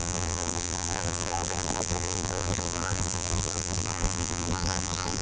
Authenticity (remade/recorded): remade